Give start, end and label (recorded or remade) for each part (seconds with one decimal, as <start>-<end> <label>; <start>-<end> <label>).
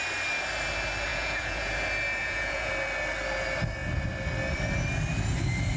0.0-1.1 recorded; 1.1-1.7 remade; 1.7-2.2 recorded; 2.2-2.7 remade; 2.7-5.8 recorded